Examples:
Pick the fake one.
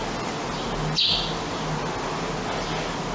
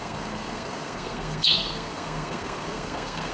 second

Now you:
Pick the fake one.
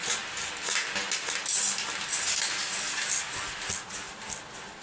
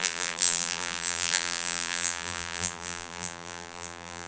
second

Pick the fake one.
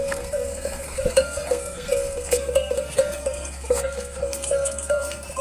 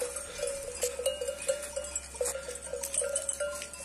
first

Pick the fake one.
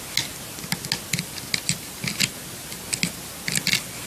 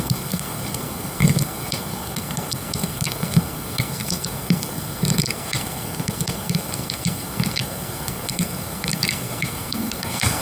second